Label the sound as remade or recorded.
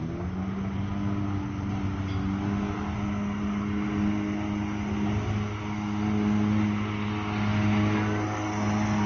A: recorded